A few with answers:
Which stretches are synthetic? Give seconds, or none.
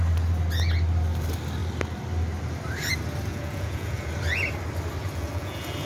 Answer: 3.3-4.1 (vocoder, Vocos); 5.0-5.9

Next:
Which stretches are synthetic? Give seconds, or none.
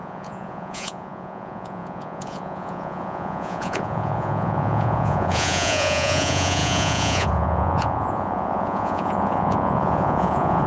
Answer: 0.0-10.7 (vocoder, Vocos)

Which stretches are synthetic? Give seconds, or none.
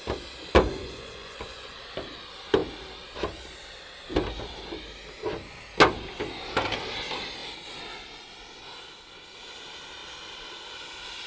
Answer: 0.8-1.7 (vocoder, Vocos)